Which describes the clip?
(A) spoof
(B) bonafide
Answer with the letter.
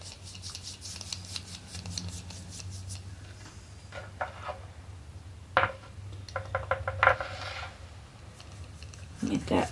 B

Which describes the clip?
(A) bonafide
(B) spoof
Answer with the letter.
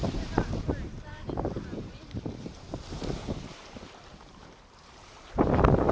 B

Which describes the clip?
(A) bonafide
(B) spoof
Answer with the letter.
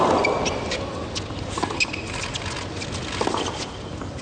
A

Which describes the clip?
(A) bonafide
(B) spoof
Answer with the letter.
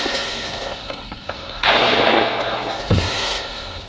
B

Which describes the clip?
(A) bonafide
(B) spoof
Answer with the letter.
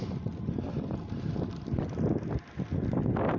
A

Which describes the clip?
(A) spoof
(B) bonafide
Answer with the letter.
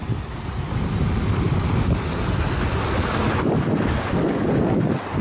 B